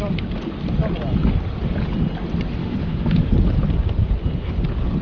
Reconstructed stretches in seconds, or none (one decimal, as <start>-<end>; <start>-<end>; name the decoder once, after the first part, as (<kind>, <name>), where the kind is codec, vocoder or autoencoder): 2.6-3.3 (autoencoder, DAC-VAE)